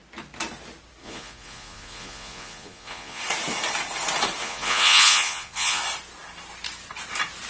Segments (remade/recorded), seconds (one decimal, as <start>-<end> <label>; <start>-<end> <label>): 0.0-1.0 recorded; 1.0-3.2 remade; 3.2-4.4 recorded; 4.4-5.8 remade; 5.8-7.5 recorded